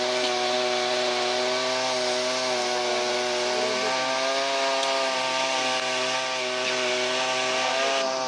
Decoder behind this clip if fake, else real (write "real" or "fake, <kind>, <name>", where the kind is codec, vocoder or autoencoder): real